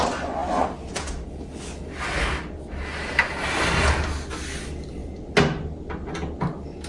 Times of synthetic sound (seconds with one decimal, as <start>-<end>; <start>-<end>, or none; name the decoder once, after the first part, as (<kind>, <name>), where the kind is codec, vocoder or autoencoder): 5.0-5.9 (vocoder, BigVGAN v2)